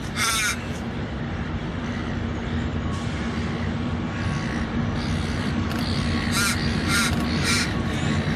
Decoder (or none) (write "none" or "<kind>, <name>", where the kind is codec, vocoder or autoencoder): vocoder, BigVGAN v2